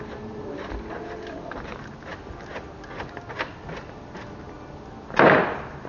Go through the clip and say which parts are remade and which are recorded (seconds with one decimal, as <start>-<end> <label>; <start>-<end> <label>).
0.0-5.9 recorded